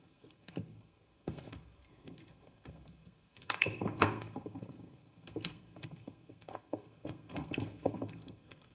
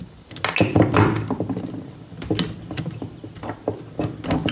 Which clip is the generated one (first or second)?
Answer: first